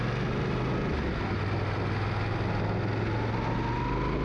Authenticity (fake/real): real